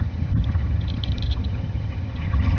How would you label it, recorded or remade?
remade